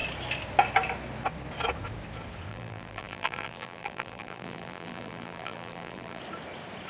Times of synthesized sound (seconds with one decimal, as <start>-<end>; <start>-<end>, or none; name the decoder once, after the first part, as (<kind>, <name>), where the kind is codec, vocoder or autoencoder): 2.5-6.2 (vocoder, BigVGAN v2)